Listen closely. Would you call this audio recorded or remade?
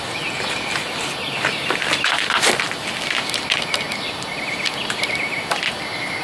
recorded